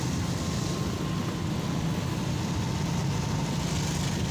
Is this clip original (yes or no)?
yes